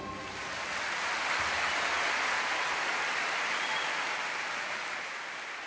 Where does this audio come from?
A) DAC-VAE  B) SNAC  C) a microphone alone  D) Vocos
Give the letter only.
C